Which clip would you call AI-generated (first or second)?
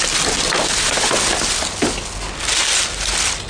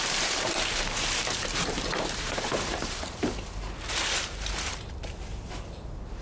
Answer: second